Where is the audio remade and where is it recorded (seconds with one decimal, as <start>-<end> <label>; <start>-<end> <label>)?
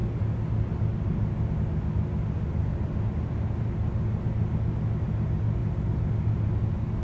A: 0.0-7.0 recorded